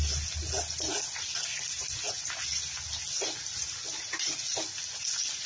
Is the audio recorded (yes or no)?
yes